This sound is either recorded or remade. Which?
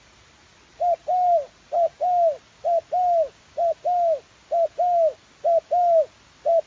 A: recorded